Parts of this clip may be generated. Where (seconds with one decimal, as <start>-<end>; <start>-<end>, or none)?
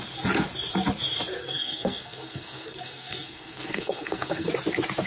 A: 1.4-4.5